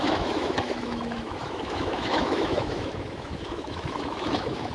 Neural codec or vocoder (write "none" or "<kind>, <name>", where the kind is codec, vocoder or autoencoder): autoencoder, DAC-VAE